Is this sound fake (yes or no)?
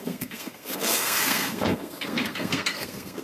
yes